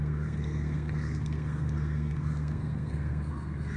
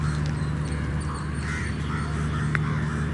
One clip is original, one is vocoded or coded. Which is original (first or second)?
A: second